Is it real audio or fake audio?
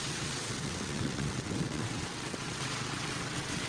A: fake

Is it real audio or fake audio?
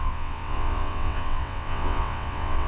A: fake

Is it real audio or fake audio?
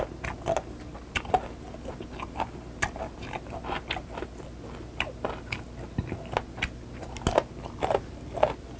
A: real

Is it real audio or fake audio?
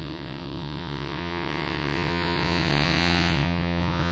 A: fake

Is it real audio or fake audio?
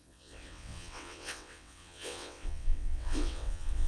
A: fake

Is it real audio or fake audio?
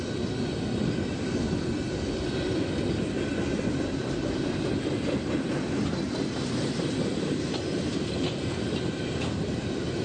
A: real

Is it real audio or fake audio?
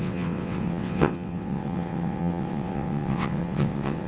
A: fake